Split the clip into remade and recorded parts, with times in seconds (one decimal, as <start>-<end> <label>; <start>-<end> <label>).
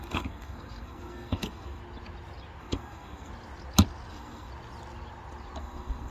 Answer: 0.0-1.8 remade; 1.8-2.6 recorded; 2.6-3.3 remade; 3.3-4.1 recorded; 4.1-4.5 remade; 4.5-5.6 recorded; 5.6-6.1 remade